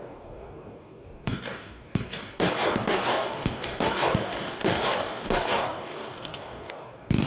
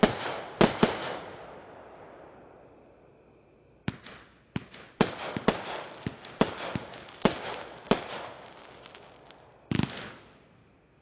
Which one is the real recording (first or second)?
second